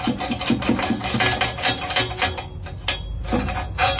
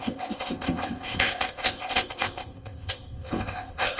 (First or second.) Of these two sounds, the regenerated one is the second